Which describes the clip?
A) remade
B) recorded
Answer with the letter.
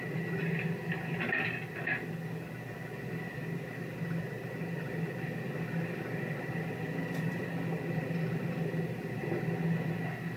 B